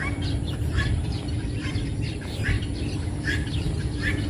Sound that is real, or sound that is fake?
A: fake